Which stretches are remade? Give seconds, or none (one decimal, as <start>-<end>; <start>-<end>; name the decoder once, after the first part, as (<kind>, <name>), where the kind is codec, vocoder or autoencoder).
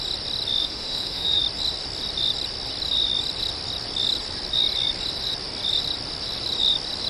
0.6-1.4 (autoencoder, DAC-VAE)